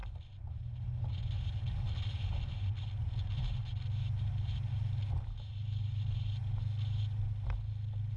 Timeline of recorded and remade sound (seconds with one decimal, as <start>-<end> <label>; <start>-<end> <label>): 0.0-8.2 recorded